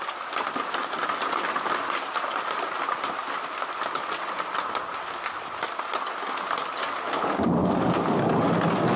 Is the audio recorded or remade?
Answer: recorded